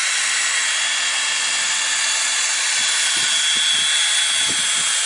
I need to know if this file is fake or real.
real